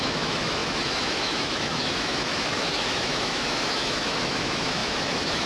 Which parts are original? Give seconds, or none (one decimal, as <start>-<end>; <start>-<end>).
none